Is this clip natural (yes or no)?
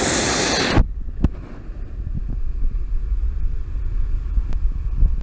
yes